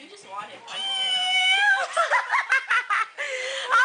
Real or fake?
fake